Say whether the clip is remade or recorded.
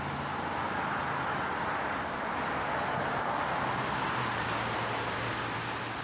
recorded